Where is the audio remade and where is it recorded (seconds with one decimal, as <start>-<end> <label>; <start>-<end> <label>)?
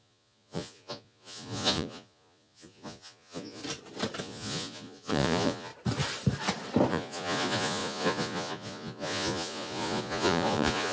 0.0-3.6 remade; 3.6-4.2 recorded; 4.2-5.7 remade; 5.7-6.9 recorded; 6.9-10.9 remade